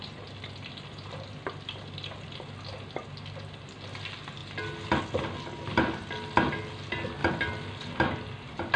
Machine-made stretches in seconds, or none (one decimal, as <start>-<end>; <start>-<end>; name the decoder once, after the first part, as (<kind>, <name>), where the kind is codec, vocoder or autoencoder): none